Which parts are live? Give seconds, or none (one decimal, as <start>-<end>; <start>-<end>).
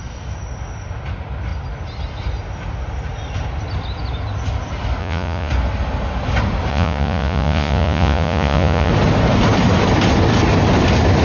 0.0-5.0; 5.5-6.7; 8.9-11.2